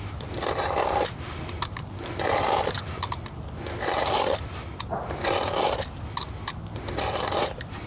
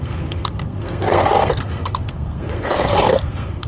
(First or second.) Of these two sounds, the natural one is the first